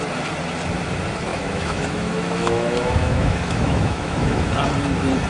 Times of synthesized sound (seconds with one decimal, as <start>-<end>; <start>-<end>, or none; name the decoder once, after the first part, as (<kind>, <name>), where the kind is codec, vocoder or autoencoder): 1.3-4.5 (autoencoder, DAC-VAE)